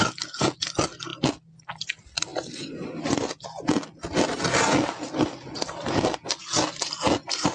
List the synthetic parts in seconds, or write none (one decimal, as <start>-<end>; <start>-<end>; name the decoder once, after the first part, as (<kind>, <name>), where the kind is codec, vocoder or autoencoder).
none

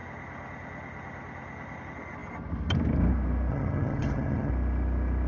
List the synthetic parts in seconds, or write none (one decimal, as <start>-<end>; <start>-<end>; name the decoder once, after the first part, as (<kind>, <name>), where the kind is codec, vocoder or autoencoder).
3.5-4.5 (vocoder, HiFi-GAN)